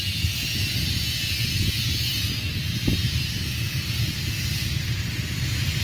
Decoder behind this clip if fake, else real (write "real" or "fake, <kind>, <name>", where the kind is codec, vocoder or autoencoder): real